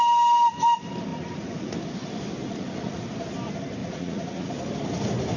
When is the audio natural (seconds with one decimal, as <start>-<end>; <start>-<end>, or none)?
0.0-1.1; 1.7-2.4; 3.0-3.8; 4.5-5.4